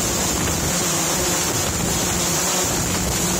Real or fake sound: real